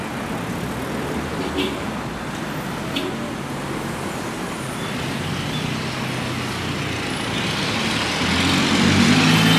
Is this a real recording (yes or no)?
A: yes